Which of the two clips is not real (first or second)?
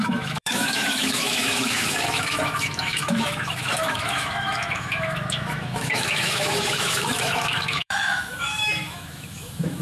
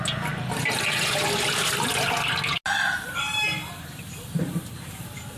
first